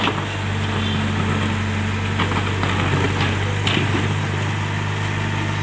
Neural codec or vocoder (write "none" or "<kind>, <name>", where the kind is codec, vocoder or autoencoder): none